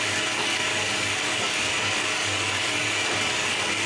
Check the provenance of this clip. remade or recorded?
remade